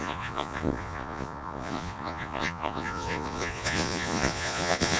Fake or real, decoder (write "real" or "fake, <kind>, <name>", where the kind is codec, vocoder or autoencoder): fake, vocoder, Vocos